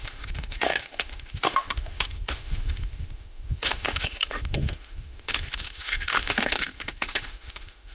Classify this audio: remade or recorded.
remade